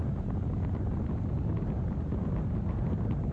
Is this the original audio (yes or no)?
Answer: yes